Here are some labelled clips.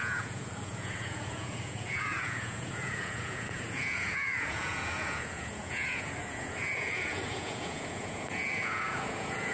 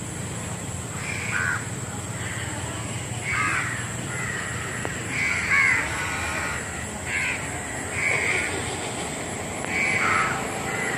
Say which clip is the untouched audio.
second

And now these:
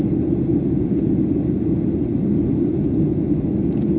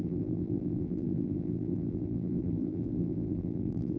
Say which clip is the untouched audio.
first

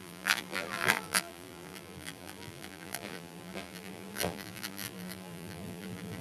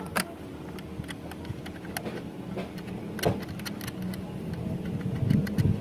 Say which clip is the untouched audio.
second